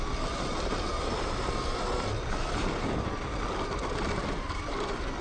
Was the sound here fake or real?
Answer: real